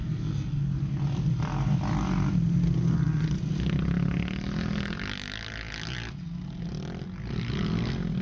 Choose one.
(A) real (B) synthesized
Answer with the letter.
A